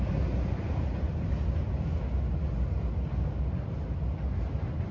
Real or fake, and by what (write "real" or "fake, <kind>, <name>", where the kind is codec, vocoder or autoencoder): real